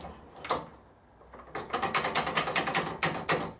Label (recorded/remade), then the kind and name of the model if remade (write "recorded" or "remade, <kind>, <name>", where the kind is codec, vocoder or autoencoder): recorded